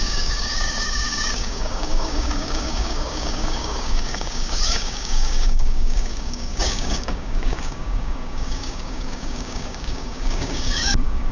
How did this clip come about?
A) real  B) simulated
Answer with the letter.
B